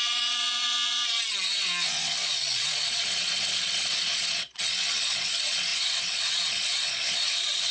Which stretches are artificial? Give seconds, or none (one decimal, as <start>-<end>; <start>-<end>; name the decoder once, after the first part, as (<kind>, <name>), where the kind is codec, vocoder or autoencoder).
0.0-7.7 (vocoder, Vocos)